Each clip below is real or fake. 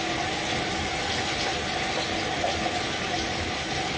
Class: real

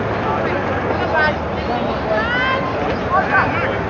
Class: real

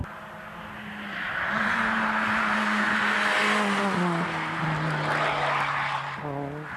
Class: real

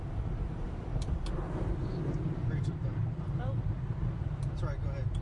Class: real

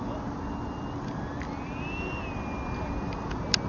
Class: real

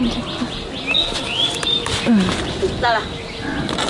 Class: real